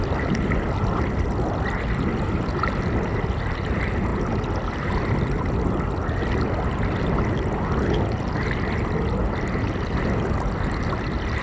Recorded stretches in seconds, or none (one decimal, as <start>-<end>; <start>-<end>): 0.0-11.4